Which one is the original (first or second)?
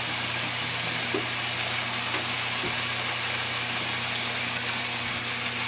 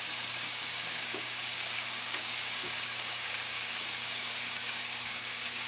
first